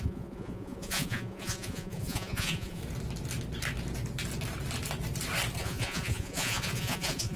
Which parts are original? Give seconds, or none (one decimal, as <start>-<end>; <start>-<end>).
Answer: 2.8-5.6